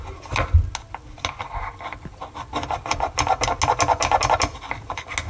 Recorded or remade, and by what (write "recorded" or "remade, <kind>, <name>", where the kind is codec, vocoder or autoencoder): recorded